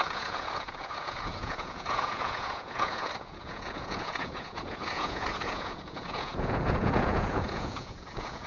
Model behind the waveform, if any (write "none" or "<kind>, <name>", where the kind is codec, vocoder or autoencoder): vocoder, Vocos